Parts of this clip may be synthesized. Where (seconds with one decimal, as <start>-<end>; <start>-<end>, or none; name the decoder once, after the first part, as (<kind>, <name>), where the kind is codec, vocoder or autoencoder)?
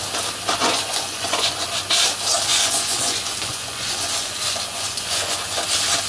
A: 0.6-1.8 (vocoder, Vocos); 2.5-5.6